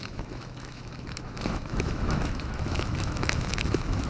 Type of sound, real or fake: fake